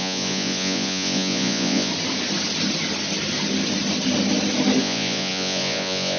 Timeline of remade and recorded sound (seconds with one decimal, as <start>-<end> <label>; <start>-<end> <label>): 0.0-1.9 remade; 1.9-4.8 recorded; 4.8-6.2 remade